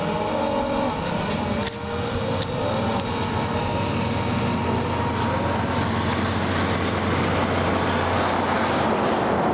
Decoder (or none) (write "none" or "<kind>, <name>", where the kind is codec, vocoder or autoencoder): none